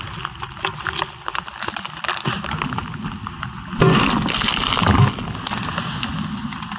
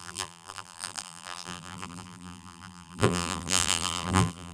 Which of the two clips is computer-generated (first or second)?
second